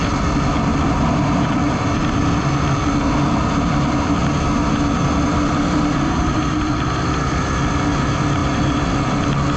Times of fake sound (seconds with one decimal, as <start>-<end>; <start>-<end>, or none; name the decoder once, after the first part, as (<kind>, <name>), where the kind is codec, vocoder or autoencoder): 0.7-2.5 (vocoder, BigVGAN v2); 5.3-7.7